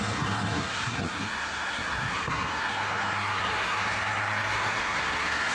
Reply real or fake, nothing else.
fake